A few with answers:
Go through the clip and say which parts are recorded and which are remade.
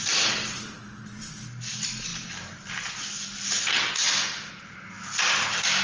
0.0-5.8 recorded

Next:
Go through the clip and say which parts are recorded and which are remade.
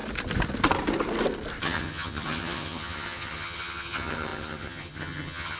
0.0-1.6 recorded; 1.6-5.6 remade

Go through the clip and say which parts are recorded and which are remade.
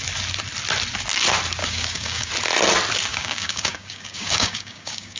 0.0-1.6 recorded; 1.6-2.3 remade; 2.3-3.1 recorded; 3.1-5.2 remade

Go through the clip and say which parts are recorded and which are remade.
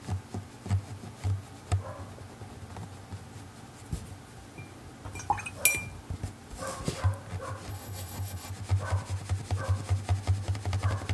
0.0-7.7 recorded; 7.7-8.5 remade; 8.5-11.1 recorded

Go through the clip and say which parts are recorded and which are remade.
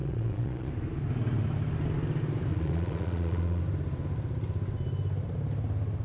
0.0-0.7 remade; 0.7-2.5 recorded; 2.5-3.6 remade; 3.6-6.0 recorded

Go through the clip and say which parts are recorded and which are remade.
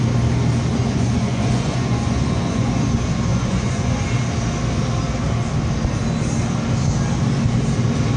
0.0-0.7 recorded; 0.7-2.8 remade; 2.8-3.3 recorded; 3.3-4.0 remade; 4.0-8.2 recorded